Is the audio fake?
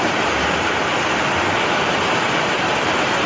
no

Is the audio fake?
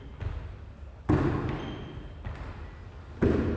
no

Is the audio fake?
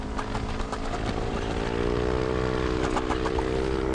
no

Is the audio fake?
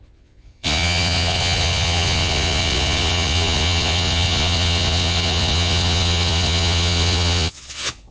yes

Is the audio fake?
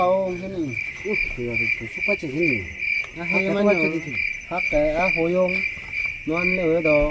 no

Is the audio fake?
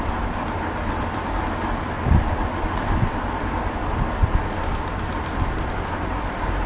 yes